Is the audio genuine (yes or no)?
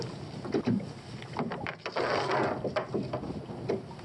yes